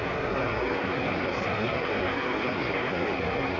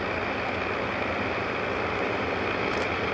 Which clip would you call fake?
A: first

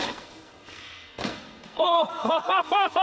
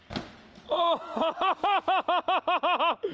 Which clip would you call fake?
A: first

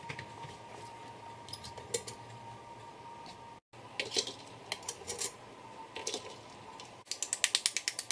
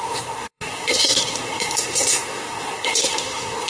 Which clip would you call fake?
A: second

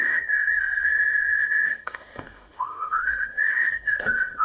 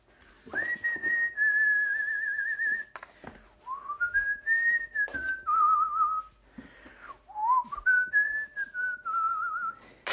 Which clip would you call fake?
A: first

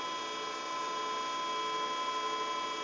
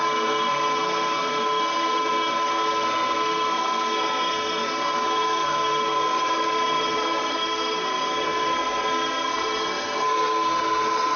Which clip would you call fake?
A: second